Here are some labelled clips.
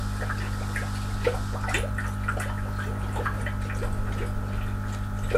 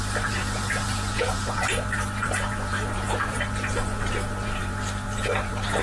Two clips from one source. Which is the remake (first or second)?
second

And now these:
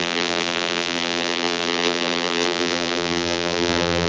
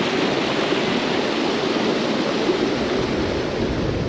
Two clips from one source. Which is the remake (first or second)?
first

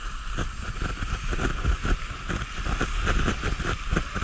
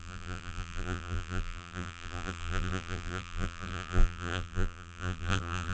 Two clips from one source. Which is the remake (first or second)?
second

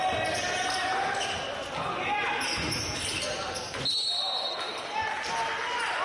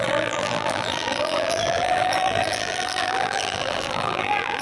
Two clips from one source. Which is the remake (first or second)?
second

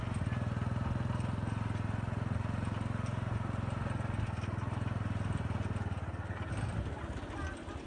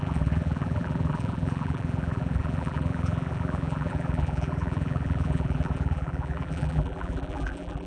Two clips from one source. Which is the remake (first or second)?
second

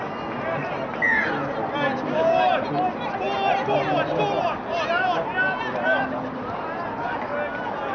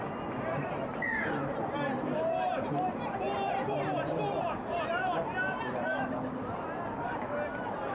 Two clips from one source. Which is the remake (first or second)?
second